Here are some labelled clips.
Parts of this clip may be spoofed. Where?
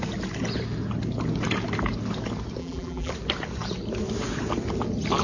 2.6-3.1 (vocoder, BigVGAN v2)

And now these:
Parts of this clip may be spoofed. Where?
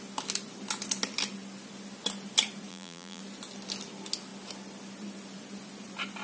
2.7-3.2 (vocoder, BigVGAN v2)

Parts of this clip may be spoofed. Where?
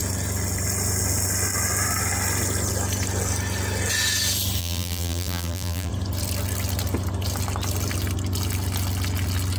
4.6-5.9 (vocoder, BigVGAN v2)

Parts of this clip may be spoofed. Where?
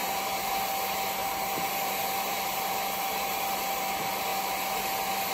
0.0-0.5 (vocoder, BigVGAN v2); 1.2-3.8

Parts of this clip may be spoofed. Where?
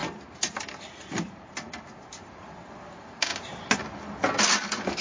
0.0-3.3 (vocoder, BigVGAN v2); 4.4-5.0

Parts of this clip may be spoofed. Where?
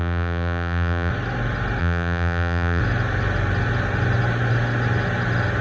0.0-1.1 (vocoder, BigVGAN v2); 1.8-2.8